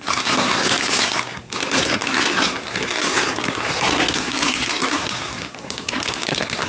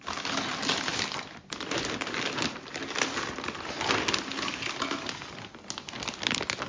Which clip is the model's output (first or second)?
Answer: first